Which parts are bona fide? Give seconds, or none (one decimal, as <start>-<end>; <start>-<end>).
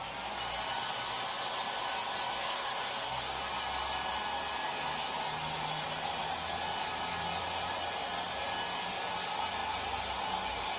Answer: 0.0-2.4; 3.4-10.8